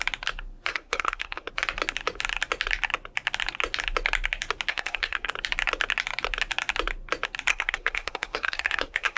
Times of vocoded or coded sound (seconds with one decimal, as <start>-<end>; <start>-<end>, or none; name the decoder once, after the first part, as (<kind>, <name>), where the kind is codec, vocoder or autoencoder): 0.7-1.5 (codec, SNAC); 4.7-5.3; 7.5-9.2